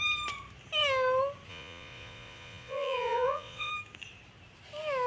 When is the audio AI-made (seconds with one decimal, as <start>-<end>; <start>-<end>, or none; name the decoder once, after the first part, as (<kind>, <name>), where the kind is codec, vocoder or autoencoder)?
1.5-3.7 (vocoder, Vocos)